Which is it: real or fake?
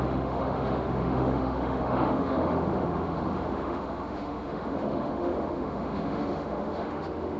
fake